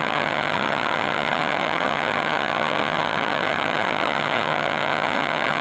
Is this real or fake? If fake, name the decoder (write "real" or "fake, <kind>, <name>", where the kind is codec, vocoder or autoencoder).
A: fake, vocoder, HiFi-GAN